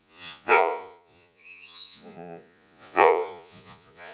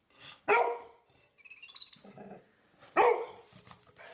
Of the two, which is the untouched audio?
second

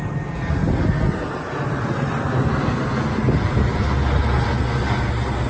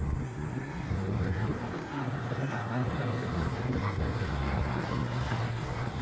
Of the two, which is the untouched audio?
first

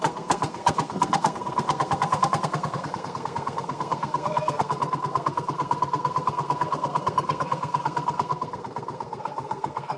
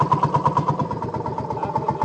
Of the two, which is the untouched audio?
second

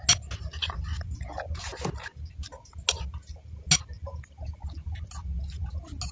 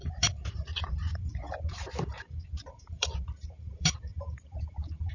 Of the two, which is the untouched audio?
first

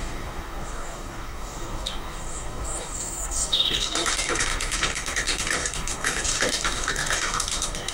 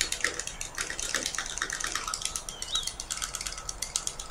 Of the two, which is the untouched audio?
second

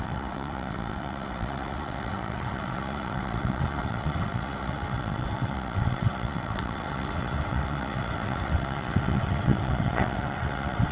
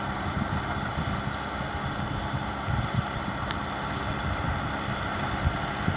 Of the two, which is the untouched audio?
second